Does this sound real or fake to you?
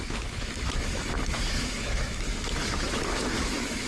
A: fake